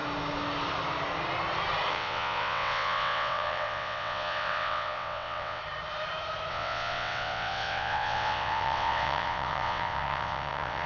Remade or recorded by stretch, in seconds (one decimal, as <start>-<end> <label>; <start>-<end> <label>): 0.0-1.9 recorded; 1.9-5.6 remade; 5.6-6.5 recorded; 6.5-10.9 remade